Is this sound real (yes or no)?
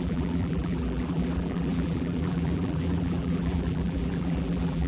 no